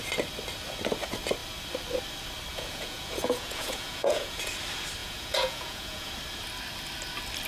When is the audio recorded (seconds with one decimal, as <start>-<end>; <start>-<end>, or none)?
0.0-2.5; 4.5-5.0; 6.1-7.5